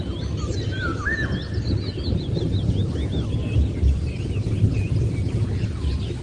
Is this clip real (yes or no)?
yes